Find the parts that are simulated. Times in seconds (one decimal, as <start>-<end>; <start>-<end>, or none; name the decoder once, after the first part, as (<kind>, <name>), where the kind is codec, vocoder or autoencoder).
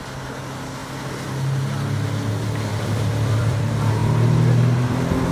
2.7-3.6 (vocoder, BigVGAN v2)